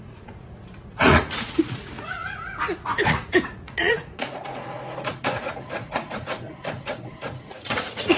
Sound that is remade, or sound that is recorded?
remade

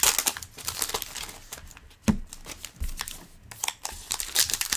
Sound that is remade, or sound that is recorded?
recorded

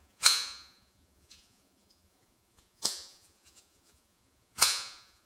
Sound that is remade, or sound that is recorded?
remade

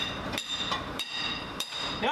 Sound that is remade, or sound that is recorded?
remade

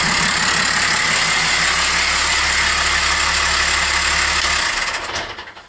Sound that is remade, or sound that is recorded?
recorded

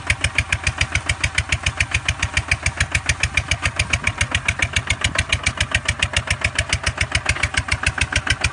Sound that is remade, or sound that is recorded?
recorded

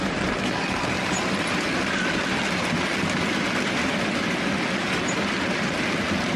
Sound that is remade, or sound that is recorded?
recorded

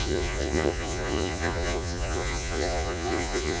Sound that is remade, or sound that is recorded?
remade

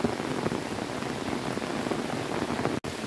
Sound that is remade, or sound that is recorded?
recorded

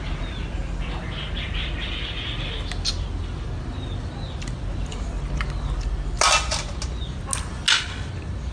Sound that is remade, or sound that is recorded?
recorded